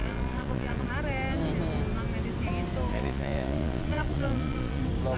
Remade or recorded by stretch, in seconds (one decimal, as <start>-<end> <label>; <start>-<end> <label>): 0.0-0.9 remade; 0.9-2.9 recorded; 2.9-4.8 remade; 4.8-5.2 recorded